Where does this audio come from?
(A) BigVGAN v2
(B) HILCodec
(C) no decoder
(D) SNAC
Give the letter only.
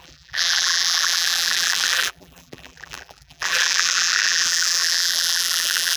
A